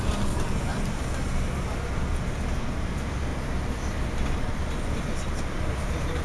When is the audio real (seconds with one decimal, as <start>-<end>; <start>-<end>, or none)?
0.0-6.2